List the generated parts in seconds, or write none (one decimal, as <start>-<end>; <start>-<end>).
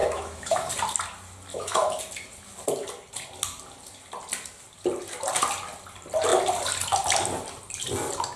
0.0-0.7; 1.5-2.0